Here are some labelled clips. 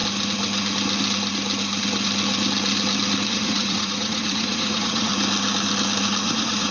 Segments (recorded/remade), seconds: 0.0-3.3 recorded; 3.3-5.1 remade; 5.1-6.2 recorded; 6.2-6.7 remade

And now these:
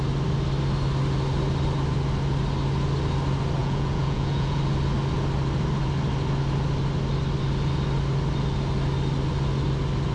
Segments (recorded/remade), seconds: 0.0-3.6 recorded; 3.6-4.6 remade; 4.6-10.1 recorded

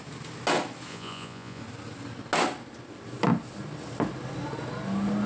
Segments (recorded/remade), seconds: 0.0-0.9 recorded; 0.9-1.6 remade; 1.6-5.3 recorded

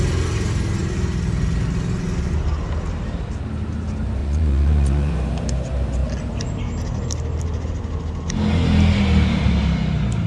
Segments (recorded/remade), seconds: 0.0-4.2 recorded; 4.2-5.1 remade; 5.1-10.3 recorded

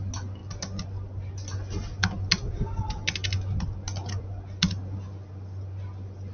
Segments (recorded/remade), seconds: 0.0-6.3 recorded

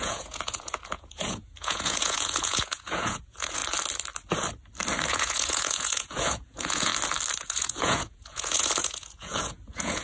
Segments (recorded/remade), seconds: 0.0-3.6 remade; 3.6-5.1 recorded; 5.1-6.9 remade; 6.9-7.4 recorded; 7.4-10.0 remade